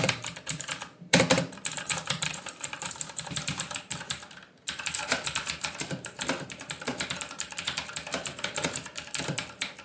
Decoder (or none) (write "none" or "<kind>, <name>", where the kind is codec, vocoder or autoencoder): vocoder, BigVGAN v2